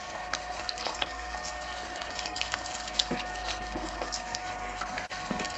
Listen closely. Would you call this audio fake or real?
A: fake